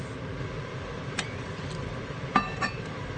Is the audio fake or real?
real